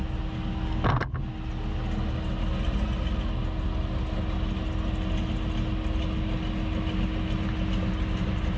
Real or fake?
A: real